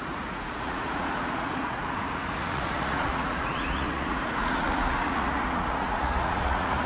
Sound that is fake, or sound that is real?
fake